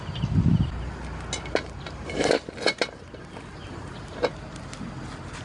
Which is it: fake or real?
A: real